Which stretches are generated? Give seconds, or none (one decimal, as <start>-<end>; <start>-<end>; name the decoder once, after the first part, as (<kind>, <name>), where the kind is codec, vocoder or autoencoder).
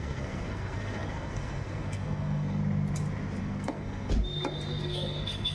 0.0-2.6 (codec, SNAC); 3.4-4.1; 4.8-5.5